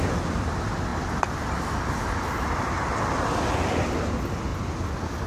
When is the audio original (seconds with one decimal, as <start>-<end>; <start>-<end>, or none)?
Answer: 0.0-5.3